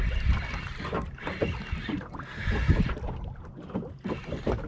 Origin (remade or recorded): recorded